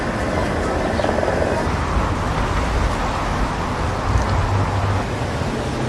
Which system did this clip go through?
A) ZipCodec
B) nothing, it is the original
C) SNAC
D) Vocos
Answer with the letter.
B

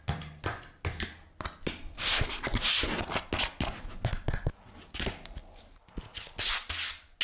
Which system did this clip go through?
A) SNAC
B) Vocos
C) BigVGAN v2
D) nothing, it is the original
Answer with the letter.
D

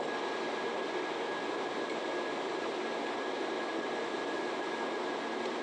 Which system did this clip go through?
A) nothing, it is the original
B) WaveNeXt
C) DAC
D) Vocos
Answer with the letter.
A